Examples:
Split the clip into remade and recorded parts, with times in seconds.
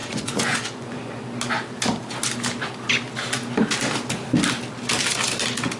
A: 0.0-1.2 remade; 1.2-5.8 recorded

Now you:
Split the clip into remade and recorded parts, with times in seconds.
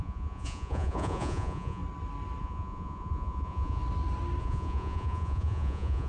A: 0.0-1.8 remade; 1.8-2.4 recorded; 2.4-3.8 remade; 3.8-4.4 recorded; 4.4-6.1 remade